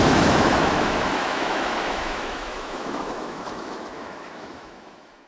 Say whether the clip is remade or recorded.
remade